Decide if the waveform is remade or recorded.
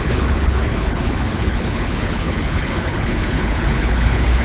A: remade